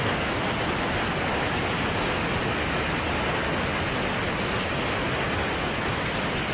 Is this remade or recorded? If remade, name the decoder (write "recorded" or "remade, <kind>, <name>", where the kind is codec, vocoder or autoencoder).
recorded